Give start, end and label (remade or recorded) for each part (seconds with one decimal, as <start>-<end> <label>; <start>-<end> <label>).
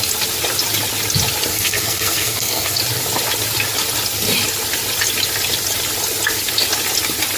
0.0-1.5 recorded; 1.5-2.8 remade; 2.8-7.4 recorded